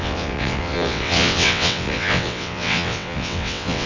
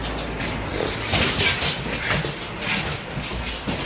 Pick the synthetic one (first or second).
first